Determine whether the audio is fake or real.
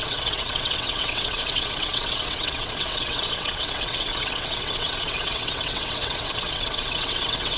fake